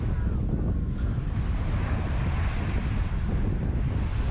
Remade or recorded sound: recorded